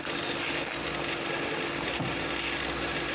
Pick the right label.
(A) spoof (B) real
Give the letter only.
B